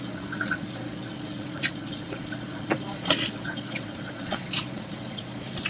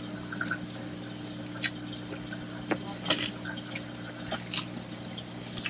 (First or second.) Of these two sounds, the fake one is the first